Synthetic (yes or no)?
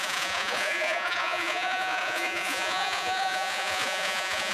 yes